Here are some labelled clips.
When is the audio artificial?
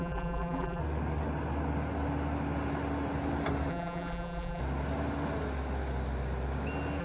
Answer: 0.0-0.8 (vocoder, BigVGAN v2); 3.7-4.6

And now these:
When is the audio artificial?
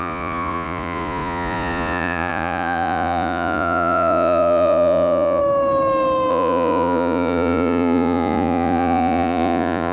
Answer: 0.0-5.4 (vocoder, Vocos); 6.3-9.9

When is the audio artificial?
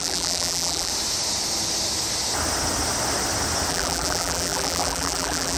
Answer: 0.0-0.9 (vocoder, BigVGAN v2); 3.7-5.6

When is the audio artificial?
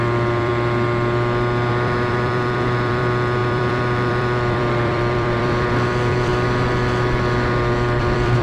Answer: 0.0-0.5 (vocoder, BigVGAN v2); 1.7-6.3; 8.0-8.4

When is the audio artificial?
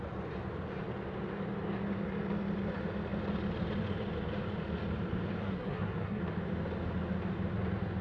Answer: 5.4-6.2 (codec, SNAC)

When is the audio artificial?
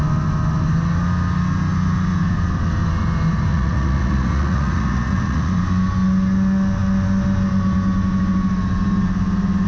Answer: 3.5-5.5 (vocoder, Vocos)